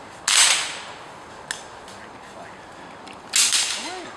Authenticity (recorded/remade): recorded